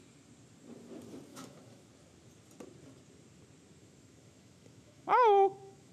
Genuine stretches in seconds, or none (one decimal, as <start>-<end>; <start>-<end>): 0.0-1.3; 1.9-3.8